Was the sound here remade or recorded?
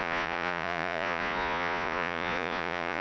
remade